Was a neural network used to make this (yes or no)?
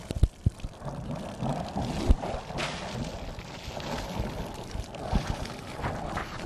no